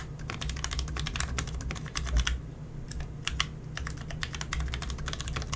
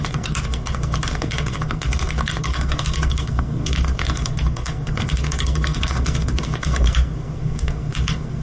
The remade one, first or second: second